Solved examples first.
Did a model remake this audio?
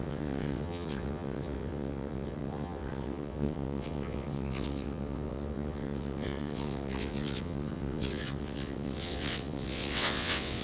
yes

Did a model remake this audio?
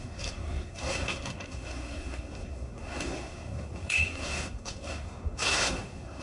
yes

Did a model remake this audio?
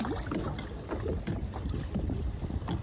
no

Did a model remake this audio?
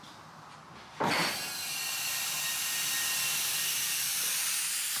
no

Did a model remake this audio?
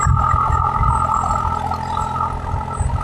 no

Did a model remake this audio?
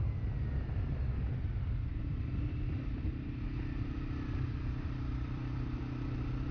yes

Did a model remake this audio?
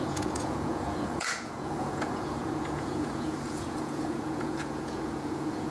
yes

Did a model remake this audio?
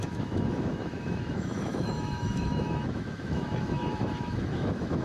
yes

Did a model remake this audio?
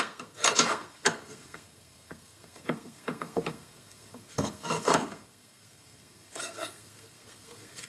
yes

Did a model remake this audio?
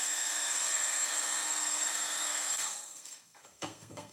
yes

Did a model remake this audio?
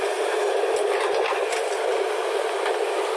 no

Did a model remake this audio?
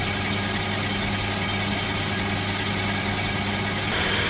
no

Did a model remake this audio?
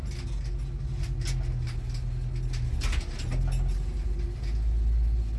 no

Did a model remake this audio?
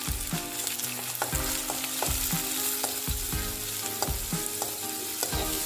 no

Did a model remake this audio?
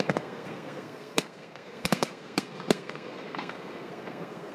yes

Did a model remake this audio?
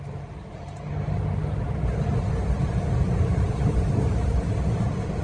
no